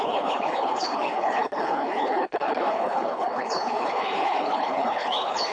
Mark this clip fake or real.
fake